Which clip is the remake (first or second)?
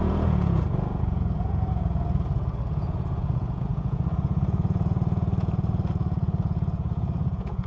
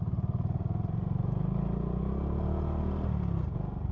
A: first